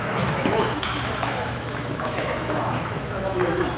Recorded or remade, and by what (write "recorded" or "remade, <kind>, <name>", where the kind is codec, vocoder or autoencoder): remade, autoencoder, DAC-VAE